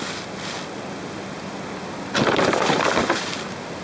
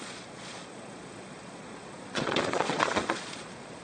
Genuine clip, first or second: first